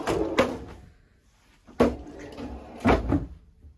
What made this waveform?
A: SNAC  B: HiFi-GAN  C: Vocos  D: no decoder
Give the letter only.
D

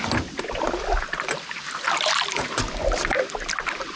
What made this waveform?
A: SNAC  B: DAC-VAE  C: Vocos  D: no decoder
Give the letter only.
D